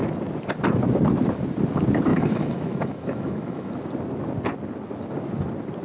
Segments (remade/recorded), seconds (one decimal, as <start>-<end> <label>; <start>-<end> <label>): 0.0-2.1 recorded; 2.1-3.7 remade; 3.7-5.8 recorded